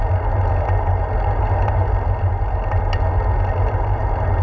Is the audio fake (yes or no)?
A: no